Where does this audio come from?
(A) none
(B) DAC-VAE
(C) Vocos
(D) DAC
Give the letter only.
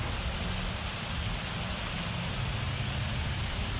A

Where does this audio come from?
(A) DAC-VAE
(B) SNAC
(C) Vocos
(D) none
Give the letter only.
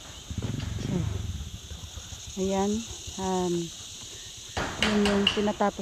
D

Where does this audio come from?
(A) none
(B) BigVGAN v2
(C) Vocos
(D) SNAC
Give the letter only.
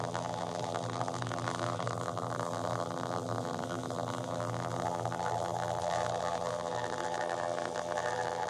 B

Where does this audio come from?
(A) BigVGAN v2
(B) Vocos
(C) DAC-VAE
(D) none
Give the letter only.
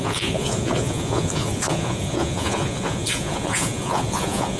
B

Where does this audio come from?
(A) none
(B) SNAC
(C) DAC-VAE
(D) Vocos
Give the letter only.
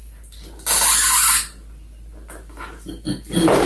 A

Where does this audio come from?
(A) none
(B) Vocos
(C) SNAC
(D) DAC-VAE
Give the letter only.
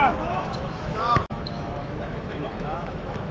D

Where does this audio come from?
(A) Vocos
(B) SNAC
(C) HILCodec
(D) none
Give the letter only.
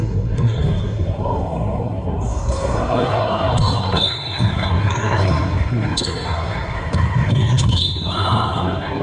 B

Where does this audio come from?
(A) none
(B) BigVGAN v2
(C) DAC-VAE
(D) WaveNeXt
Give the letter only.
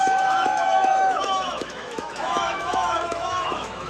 C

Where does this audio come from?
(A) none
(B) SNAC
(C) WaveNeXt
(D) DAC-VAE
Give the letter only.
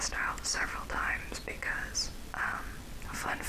A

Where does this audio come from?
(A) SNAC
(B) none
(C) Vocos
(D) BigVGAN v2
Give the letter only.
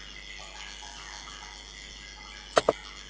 B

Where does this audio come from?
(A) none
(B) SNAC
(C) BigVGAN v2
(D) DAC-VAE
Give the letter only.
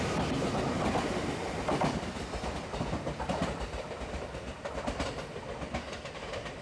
A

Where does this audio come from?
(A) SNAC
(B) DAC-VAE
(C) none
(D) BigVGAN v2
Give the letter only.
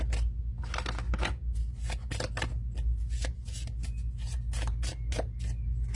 C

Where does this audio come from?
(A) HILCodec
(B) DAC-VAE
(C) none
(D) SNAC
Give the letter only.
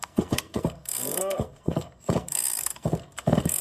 D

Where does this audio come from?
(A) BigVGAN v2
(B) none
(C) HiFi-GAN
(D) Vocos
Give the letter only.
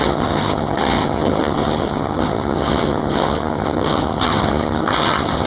C